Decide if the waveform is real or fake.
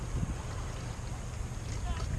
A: real